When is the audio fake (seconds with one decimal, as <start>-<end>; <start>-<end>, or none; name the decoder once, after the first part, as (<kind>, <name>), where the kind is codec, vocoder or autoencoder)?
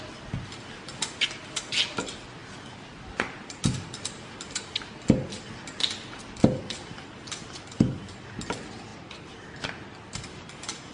none